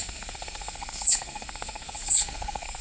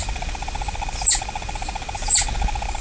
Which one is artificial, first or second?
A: first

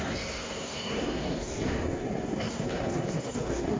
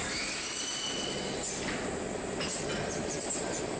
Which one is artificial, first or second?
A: first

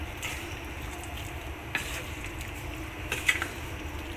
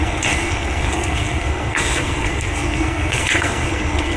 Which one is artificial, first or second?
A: second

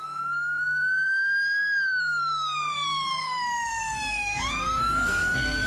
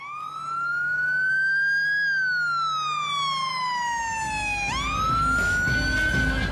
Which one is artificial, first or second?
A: first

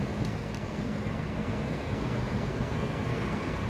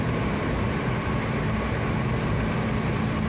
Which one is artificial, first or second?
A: first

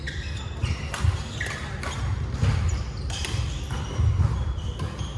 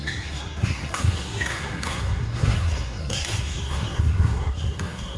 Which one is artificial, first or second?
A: second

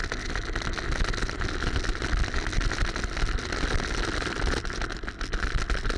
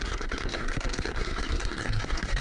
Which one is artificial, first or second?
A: second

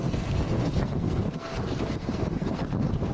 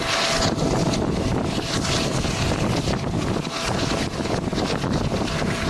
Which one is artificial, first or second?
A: first